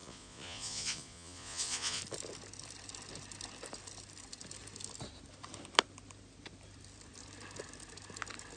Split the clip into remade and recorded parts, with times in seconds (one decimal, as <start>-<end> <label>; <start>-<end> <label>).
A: 0.0-2.0 remade; 2.0-8.6 recorded